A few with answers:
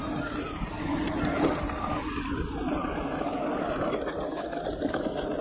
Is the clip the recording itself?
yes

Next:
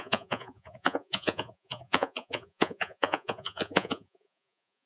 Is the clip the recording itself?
no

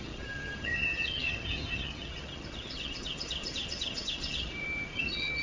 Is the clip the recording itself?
no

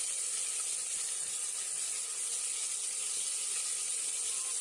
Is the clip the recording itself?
yes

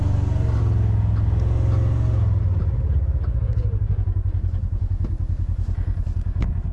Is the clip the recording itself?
yes